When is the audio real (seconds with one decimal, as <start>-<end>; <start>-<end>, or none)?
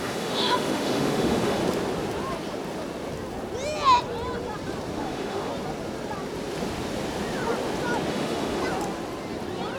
1.6-5.0; 5.5-8.1; 8.6-9.8